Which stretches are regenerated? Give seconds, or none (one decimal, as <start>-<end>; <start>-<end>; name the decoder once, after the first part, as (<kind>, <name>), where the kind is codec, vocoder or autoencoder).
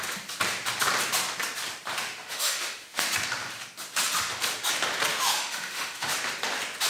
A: 2.0-3.1 (autoencoder, DAC-VAE); 5.1-6.1